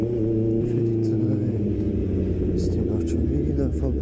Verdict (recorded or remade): recorded